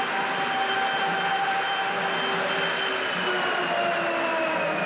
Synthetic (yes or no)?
no